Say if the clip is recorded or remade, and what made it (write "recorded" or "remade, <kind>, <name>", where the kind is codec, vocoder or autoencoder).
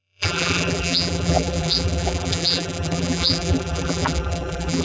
remade, vocoder, BigVGAN v2